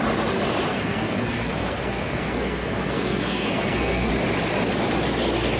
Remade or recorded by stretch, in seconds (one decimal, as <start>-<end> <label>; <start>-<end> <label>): 0.0-0.7 recorded; 0.7-4.1 remade; 4.1-5.6 recorded